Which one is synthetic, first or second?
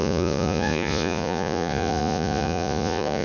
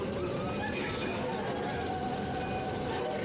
first